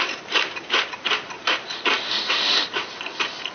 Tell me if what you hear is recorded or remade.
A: remade